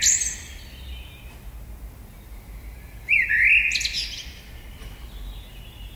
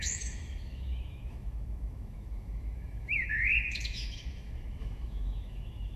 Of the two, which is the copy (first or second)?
second